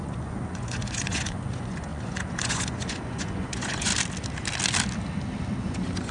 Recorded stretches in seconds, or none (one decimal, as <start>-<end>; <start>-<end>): 3.9-5.6